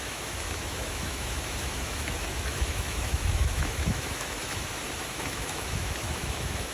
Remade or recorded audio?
remade